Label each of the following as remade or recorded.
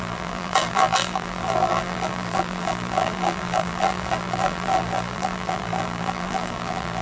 remade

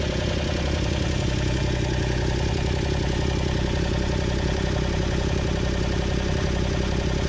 remade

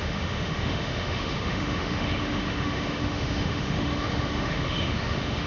remade